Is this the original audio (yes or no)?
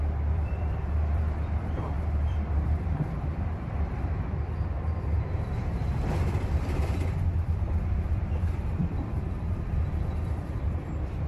no